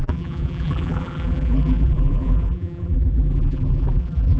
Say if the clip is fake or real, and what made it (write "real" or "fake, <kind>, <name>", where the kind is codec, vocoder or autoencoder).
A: fake, vocoder, BigVGAN v2